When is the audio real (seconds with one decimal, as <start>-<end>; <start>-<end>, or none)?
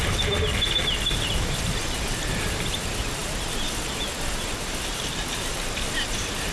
0.0-6.5